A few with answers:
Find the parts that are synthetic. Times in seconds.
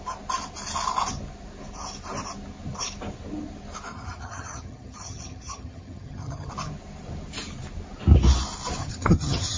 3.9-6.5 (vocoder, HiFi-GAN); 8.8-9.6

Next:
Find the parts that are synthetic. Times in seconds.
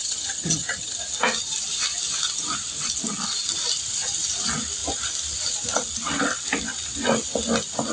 0.0-1.0 (vocoder, HiFi-GAN)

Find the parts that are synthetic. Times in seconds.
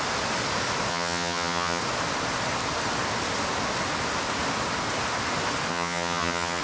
0.9-1.8 (vocoder, HiFi-GAN); 5.7-6.6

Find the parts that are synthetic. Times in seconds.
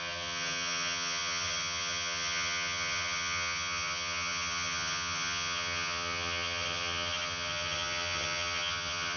0.0-9.2 (vocoder, HiFi-GAN)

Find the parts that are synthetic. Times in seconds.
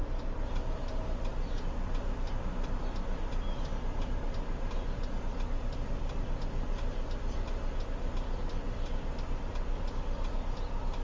none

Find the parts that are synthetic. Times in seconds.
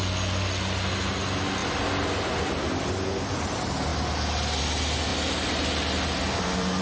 none